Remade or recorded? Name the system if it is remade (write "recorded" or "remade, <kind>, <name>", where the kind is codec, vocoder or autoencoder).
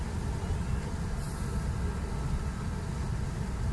recorded